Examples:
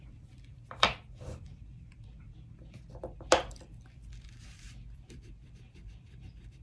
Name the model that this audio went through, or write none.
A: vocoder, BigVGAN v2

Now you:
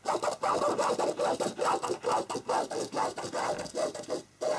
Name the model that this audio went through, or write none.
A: vocoder, BigVGAN v2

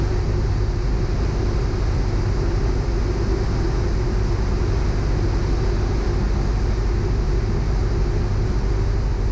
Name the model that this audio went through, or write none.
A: none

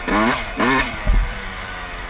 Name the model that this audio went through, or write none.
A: vocoder, BigVGAN v2